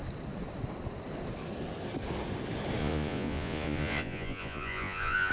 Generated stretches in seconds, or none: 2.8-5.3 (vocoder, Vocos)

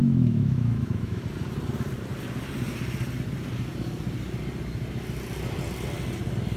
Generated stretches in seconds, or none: 0.0-1.2 (autoencoder, DAC-VAE)

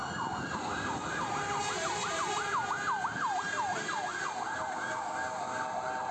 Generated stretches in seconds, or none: none

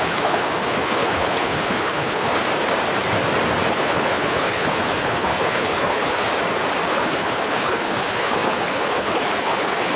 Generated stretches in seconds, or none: 0.0-2.4 (codec, HILCodec); 3.7-6.3; 6.9-10.0

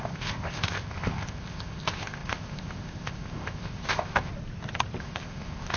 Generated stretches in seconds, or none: 0.0-4.3 (codec, ZipCodec); 5.0-5.8

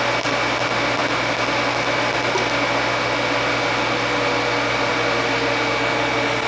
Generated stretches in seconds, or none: none

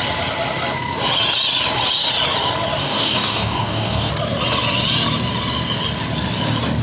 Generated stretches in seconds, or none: 2.8-4.1 (codec, DAC)